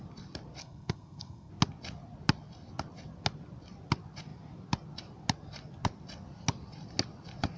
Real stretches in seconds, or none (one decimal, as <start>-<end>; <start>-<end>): 0.0-0.6; 1.5-7.6